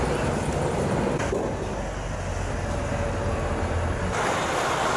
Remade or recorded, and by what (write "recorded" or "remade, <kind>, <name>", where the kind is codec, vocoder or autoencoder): recorded